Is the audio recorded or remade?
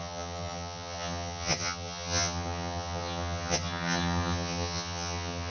remade